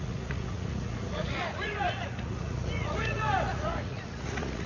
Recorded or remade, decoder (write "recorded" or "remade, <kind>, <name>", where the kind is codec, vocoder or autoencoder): remade, vocoder, Vocos